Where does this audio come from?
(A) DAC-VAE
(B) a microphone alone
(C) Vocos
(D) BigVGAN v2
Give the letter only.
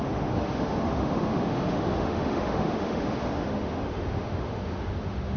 A